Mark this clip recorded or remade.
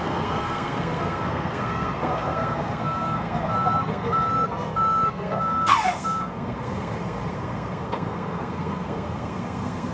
remade